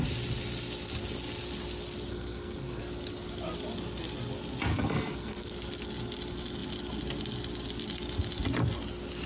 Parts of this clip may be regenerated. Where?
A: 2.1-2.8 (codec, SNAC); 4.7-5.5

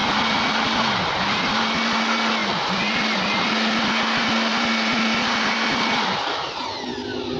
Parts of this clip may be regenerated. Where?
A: 0.0-1.4 (vocoder, BigVGAN v2); 2.4-3.5; 4.5-6.6

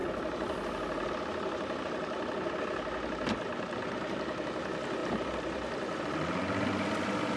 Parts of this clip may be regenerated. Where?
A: 5.0-6.0 (vocoder, BigVGAN v2)

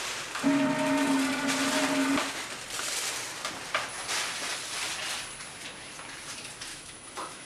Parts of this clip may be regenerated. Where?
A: 6.7-7.5 (autoencoder, DAC-VAE)